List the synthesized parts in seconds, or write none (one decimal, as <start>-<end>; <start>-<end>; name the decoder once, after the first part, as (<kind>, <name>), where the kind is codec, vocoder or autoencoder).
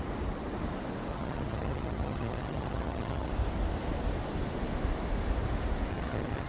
1.1-3.3 (vocoder, HiFi-GAN); 5.9-6.5